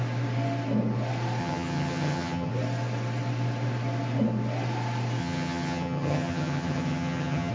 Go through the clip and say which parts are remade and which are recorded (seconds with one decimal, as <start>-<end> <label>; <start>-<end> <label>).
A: 0.0-1.4 recorded; 1.4-2.5 remade; 2.5-5.2 recorded; 5.2-7.5 remade